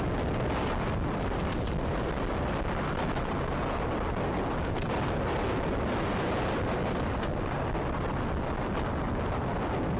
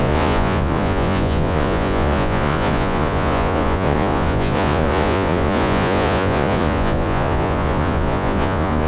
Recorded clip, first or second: first